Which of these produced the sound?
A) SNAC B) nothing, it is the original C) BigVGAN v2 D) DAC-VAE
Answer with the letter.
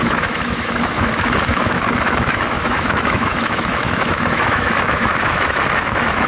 D